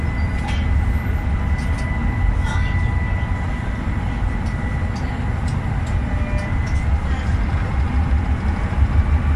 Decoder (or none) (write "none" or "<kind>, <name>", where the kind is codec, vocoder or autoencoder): none